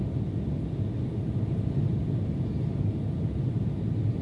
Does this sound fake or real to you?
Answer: real